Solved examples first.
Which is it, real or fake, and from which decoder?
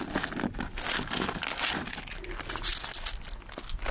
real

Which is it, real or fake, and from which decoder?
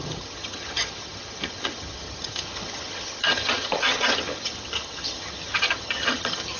fake, vocoder, HiFi-GAN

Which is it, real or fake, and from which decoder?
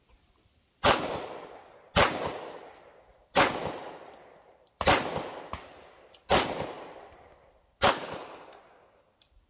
real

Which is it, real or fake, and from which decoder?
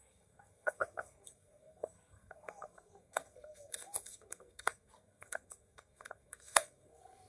fake, codec, SNAC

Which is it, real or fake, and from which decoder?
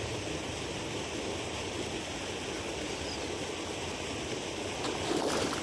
real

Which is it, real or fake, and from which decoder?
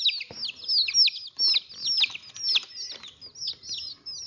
real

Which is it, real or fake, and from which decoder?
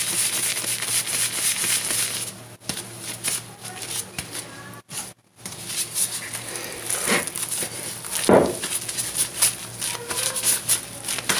real